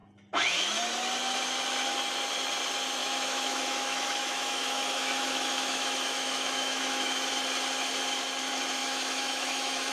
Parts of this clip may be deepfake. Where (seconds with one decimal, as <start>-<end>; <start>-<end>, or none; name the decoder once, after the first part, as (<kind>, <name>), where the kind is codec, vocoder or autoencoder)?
3.0-7.3 (autoencoder, DAC-VAE); 8.8-9.9